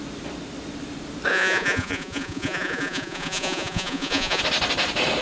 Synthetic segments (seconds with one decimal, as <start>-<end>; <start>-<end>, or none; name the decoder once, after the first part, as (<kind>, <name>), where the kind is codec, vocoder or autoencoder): 1.3-4.4 (vocoder, Vocos)